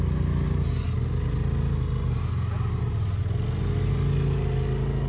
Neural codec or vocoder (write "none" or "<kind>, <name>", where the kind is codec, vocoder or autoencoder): none